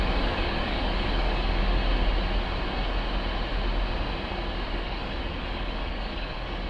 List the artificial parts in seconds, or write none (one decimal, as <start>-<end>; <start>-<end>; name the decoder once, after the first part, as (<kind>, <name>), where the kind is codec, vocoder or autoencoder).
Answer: 0.0-1.8 (codec, DAC); 4.7-6.7